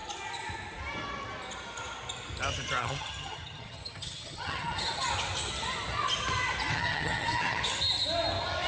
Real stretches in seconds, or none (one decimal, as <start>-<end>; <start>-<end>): 0.0-2.8; 5.1-6.7; 7.6-8.7